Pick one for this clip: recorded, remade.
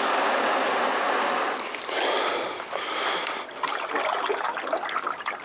recorded